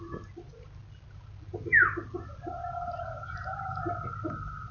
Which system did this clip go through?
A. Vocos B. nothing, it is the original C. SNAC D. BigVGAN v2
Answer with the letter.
B